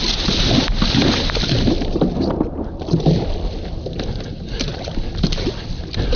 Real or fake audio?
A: real